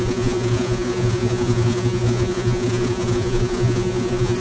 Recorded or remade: remade